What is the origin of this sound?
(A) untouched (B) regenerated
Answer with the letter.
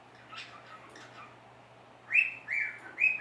A